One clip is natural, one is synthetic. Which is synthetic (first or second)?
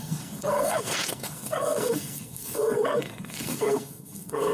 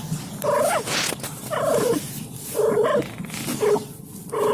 first